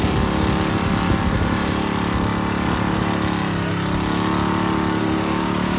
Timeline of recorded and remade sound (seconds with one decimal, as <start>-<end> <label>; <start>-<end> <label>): 0.0-5.0 recorded; 5.0-5.8 remade